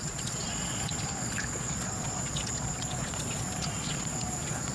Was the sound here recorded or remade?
remade